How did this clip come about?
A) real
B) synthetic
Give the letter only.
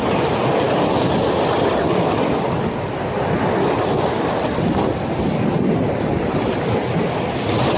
A